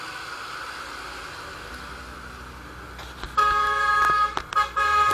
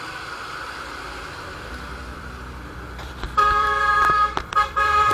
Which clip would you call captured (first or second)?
first